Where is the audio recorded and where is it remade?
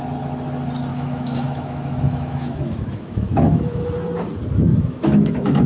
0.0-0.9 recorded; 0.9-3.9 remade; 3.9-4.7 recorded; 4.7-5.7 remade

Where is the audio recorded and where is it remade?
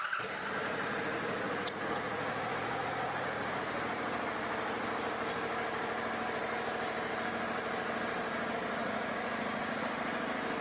0.0-0.6 recorded; 0.6-3.6 remade; 3.6-8.8 recorded; 8.8-9.8 remade; 9.8-10.6 recorded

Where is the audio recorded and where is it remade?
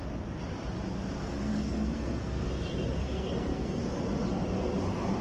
0.0-1.2 recorded; 1.2-2.5 remade; 2.5-3.0 recorded; 3.0-3.8 remade; 3.8-5.2 recorded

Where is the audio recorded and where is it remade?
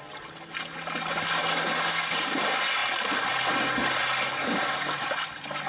0.0-1.4 recorded; 1.4-2.4 remade; 2.4-4.4 recorded; 4.4-5.0 remade; 5.0-5.7 recorded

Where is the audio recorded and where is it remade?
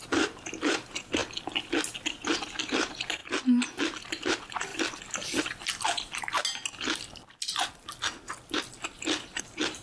0.0-1.2 remade; 1.2-2.6 recorded; 2.6-3.2 remade; 3.2-4.0 recorded; 4.0-4.7 remade; 4.7-9.4 recorded; 9.4-9.8 remade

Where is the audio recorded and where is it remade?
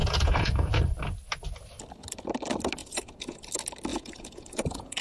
0.0-0.7 remade; 0.7-2.8 recorded; 2.8-3.5 remade; 3.5-3.9 recorded; 3.9-5.0 remade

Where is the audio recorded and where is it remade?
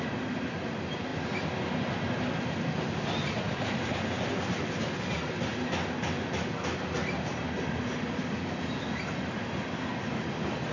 0.0-10.7 recorded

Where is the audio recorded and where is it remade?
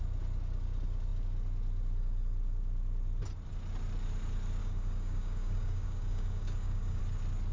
0.0-4.6 recorded; 4.6-7.0 remade; 7.0-7.5 recorded